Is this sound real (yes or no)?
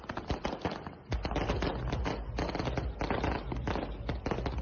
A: yes